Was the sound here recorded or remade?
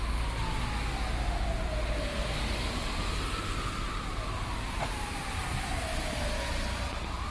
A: recorded